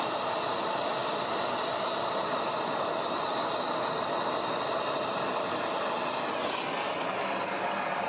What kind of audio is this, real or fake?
real